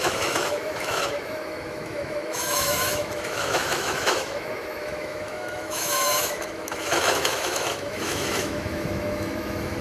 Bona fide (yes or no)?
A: no